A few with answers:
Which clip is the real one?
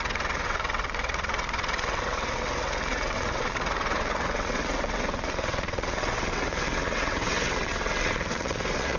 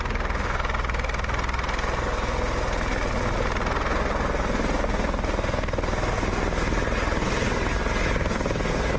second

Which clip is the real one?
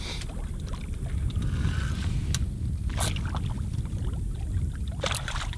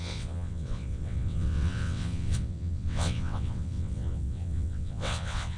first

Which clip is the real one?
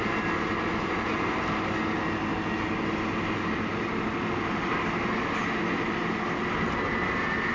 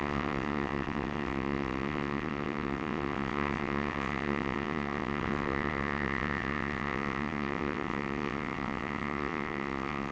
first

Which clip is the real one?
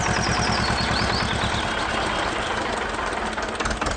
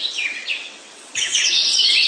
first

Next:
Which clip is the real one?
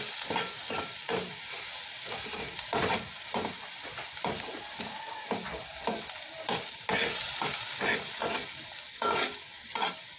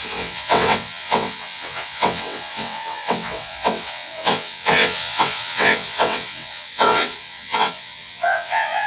first